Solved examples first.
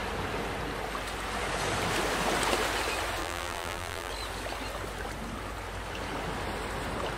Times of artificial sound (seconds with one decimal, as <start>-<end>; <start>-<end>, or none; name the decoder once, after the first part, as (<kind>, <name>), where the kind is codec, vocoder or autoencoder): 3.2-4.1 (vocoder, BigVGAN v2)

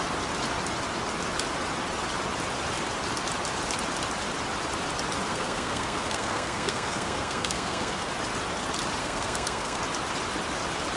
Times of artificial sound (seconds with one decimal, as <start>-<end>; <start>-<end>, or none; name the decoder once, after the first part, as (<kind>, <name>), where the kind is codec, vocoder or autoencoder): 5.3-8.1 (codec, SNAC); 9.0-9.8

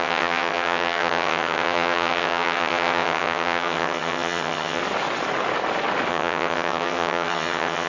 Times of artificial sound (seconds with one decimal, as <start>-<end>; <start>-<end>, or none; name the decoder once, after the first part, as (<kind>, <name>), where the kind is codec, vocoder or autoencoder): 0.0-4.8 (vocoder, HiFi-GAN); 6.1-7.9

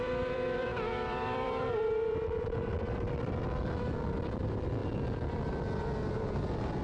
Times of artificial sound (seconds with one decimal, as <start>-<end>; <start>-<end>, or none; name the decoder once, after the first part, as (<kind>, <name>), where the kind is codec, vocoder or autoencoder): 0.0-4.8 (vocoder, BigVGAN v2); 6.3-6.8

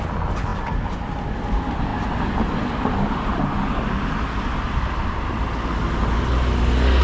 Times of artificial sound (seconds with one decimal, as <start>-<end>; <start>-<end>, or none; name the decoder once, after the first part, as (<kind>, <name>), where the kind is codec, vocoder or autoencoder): none

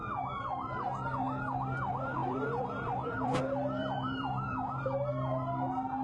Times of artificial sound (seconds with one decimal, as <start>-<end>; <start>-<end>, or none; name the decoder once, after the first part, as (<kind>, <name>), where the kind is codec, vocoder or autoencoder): 2.2-3.4 (vocoder, BigVGAN v2); 3.8-4.6

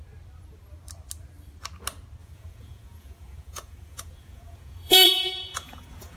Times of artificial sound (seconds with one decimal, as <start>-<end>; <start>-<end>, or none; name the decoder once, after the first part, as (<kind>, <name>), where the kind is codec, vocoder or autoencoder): 2.2-6.2 (vocoder, Vocos)